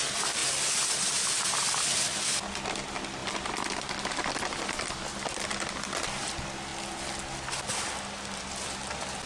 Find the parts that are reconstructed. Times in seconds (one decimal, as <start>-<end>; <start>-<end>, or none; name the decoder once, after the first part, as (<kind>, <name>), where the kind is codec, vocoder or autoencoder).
none